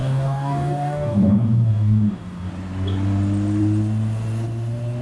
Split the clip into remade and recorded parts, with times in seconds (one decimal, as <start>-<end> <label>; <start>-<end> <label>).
0.0-2.5 remade; 2.5-5.0 recorded